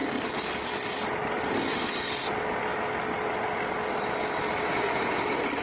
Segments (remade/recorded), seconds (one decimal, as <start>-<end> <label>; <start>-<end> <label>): 0.0-5.6 recorded